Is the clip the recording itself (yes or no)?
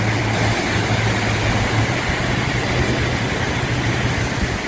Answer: yes